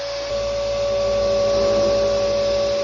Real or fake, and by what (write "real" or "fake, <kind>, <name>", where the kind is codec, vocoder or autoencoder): real